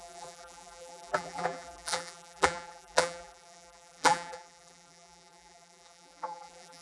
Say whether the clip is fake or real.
fake